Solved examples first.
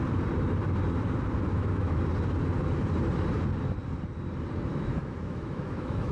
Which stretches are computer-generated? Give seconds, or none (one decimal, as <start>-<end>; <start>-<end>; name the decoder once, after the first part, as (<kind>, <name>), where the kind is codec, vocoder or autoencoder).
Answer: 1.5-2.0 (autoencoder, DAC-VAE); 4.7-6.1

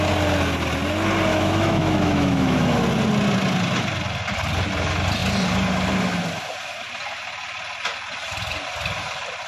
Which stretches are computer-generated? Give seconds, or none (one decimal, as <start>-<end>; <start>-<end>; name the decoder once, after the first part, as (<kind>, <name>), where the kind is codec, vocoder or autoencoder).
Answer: 1.3-2.8 (autoencoder, DAC-VAE)

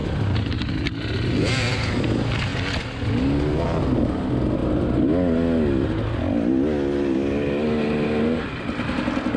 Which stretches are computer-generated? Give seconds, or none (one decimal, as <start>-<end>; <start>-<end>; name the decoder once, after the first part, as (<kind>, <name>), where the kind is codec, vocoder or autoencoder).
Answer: none

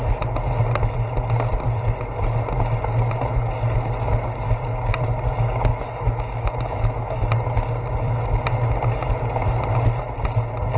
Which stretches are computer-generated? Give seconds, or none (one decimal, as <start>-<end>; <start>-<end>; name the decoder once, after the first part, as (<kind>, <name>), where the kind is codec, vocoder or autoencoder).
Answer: 5.7-7.3 (autoencoder, DAC-VAE)

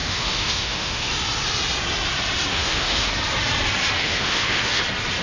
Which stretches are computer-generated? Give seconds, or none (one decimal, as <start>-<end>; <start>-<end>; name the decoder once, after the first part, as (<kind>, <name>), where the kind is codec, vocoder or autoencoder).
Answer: 0.0-1.1 (autoencoder, DAC-VAE); 2.5-3.1; 4.0-4.8

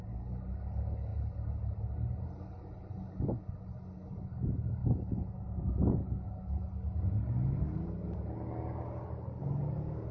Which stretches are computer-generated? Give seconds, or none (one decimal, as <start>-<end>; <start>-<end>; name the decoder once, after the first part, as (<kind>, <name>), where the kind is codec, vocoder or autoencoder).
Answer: 4.8-6.5 (autoencoder, DAC-VAE)

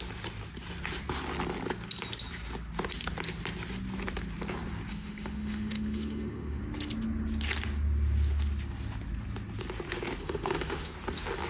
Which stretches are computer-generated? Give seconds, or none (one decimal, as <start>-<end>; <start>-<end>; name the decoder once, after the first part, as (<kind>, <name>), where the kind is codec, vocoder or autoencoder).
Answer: 4.9-6.6 (autoencoder, DAC-VAE); 10.2-10.9

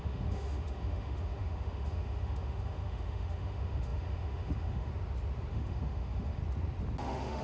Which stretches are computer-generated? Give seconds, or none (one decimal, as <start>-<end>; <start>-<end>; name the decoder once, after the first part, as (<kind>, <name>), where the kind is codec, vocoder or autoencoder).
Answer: 0.0-4.9 (autoencoder, DAC-VAE); 5.5-6.4; 7.0-7.4